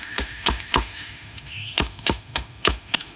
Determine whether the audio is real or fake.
fake